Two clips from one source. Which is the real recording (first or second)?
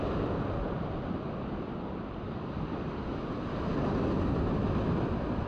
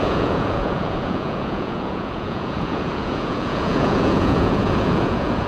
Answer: first